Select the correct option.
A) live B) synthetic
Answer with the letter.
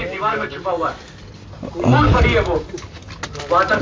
A